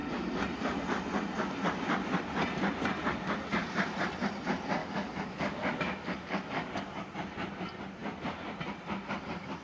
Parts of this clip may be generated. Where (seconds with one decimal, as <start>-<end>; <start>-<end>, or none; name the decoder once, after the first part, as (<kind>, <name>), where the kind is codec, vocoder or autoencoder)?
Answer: 4.8-7.1 (codec, DAC)